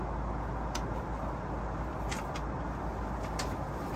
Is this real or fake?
real